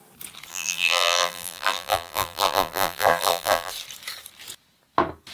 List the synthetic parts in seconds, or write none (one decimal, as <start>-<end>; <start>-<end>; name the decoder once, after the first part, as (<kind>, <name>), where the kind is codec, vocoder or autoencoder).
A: 0.5-3.7 (vocoder, BigVGAN v2)